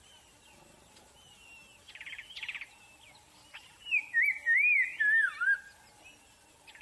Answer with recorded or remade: recorded